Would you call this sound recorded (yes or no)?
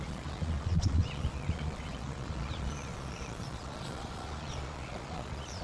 no